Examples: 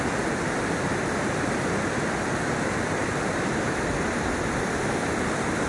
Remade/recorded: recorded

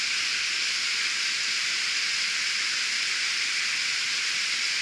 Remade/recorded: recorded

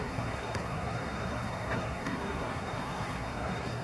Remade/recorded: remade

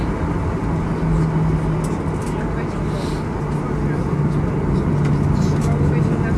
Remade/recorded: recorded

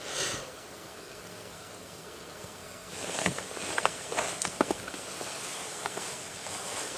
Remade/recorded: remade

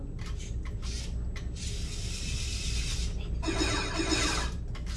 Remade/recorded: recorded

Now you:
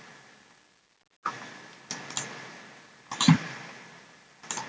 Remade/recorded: recorded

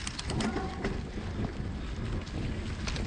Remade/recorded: recorded